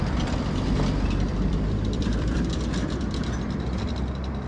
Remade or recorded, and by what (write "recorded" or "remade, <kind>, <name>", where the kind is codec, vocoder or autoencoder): remade, vocoder, BigVGAN v2